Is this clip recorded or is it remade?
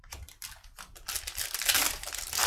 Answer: recorded